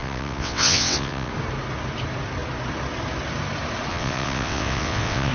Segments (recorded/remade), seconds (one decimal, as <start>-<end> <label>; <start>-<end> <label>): 0.0-1.3 remade; 1.3-3.9 recorded; 3.9-5.3 remade